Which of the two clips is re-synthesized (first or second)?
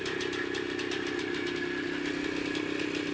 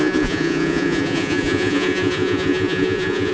second